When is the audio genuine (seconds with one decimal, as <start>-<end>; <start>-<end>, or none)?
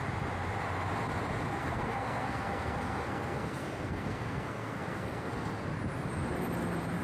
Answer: 0.0-1.5; 5.5-7.0